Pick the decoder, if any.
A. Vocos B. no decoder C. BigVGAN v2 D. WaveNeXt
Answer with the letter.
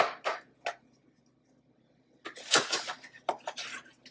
B